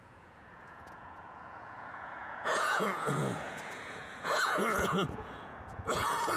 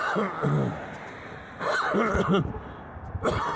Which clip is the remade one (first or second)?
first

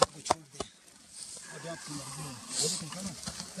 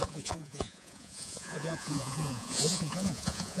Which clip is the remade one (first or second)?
second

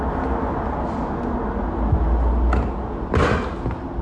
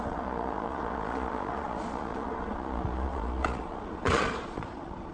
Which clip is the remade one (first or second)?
second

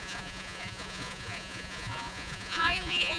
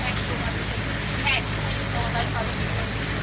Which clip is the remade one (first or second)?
first